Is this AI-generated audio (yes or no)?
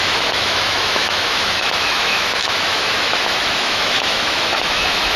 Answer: yes